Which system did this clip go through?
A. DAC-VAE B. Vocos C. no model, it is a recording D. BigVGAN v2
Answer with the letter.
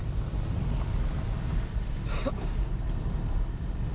D